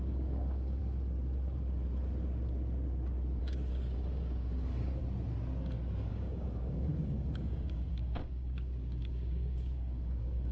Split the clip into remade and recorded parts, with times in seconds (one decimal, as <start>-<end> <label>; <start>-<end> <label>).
0.0-0.8 remade; 0.8-3.4 recorded; 3.4-5.0 remade; 5.0-6.1 recorded; 6.1-10.5 remade